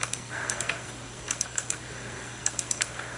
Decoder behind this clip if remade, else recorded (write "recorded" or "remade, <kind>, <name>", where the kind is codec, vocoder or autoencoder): remade, codec, SNAC